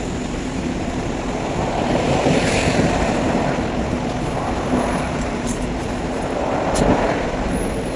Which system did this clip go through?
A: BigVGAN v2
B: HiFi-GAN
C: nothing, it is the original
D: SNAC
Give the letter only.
A